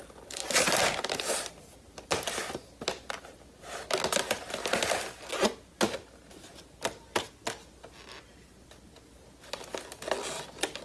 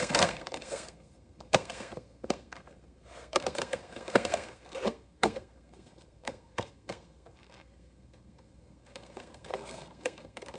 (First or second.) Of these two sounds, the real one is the first